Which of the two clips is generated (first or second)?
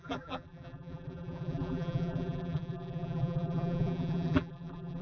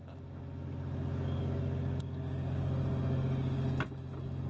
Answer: first